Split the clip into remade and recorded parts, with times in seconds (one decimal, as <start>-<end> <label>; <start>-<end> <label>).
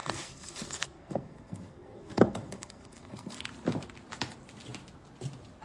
0.0-3.4 remade; 3.4-5.6 recorded